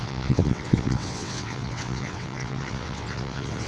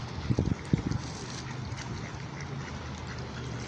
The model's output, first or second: first